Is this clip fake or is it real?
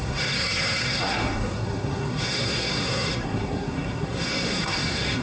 fake